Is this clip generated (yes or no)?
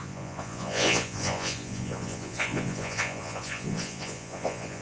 yes